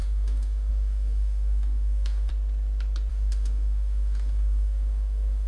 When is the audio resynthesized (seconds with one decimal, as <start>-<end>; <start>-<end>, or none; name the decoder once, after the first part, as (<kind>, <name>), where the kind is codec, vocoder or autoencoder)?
0.0-2.3 (codec, DAC); 3.1-5.5